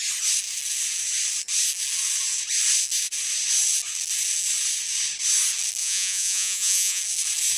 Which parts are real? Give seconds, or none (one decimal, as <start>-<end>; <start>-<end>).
0.0-5.8; 7.0-7.6